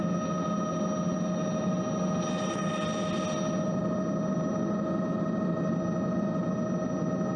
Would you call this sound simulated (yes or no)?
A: no